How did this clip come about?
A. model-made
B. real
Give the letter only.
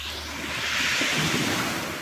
B